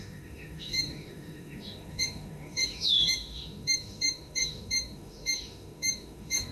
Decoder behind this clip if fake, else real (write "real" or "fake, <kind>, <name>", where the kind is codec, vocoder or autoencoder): fake, autoencoder, DAC-VAE